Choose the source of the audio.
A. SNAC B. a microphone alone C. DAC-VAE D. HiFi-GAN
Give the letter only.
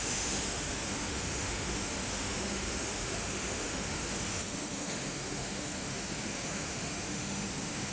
C